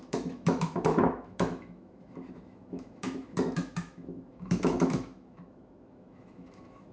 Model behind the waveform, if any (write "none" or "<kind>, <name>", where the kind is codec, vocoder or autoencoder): autoencoder, DAC-VAE